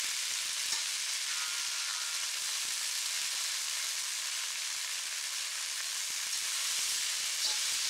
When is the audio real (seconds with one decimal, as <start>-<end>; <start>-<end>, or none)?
0.0-7.9